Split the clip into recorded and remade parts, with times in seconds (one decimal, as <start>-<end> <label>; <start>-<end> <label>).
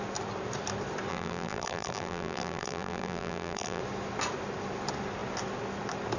0.0-1.1 recorded; 1.1-3.8 remade; 3.8-6.2 recorded